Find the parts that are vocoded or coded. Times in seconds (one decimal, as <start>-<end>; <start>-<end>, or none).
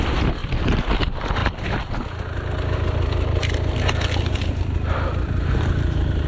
0.0-0.4; 0.9-1.4; 4.6-6.3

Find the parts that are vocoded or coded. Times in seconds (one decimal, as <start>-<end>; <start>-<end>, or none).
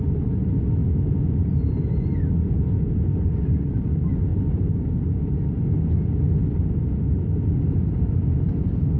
7.8-8.4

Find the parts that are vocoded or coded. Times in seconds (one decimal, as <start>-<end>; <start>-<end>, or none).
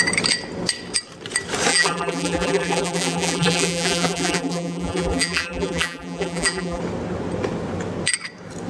1.7-6.8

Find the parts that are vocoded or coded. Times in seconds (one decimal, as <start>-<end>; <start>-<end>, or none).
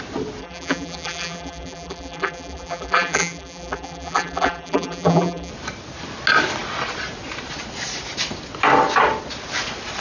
0.4-5.5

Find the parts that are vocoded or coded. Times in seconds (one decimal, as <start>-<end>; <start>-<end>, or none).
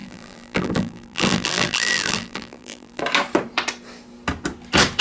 0.0-3.0